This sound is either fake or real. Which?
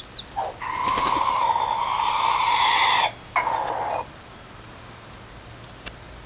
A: real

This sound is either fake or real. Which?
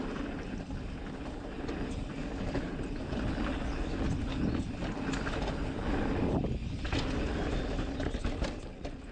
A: real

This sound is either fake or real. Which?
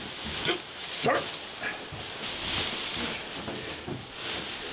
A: real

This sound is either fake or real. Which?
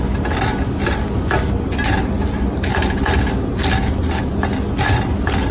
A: real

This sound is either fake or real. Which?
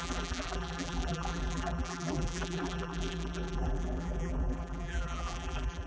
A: fake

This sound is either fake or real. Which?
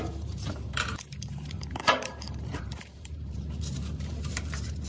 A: fake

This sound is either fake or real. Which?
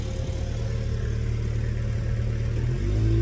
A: real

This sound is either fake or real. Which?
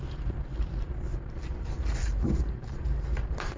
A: fake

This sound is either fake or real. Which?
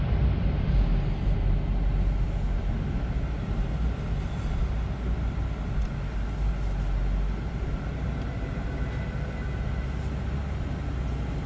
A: real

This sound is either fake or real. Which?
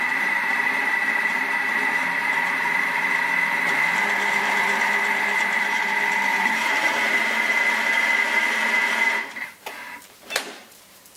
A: fake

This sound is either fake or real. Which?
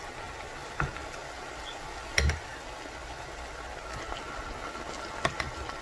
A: real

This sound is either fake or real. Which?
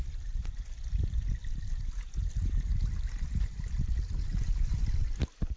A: fake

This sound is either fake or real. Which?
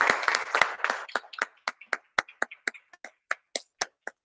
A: real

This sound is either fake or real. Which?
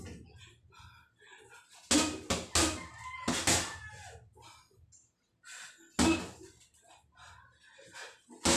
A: real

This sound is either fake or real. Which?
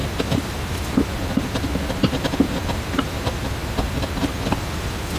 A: fake